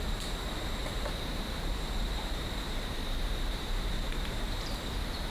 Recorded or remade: remade